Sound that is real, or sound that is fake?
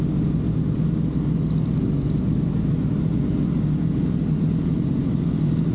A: real